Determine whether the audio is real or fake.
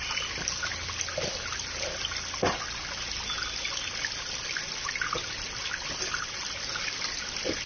real